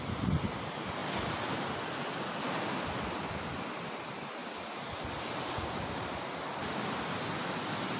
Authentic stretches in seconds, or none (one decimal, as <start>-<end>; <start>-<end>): 0.0-8.0